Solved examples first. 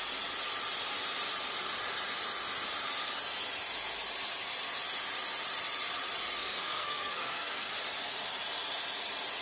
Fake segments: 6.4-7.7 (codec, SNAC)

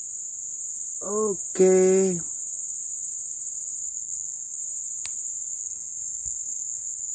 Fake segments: 3.8-4.6 (codec, SNAC); 5.6-7.1

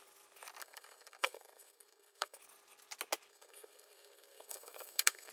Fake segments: 0.6-2.4 (codec, SNAC); 3.3-5.3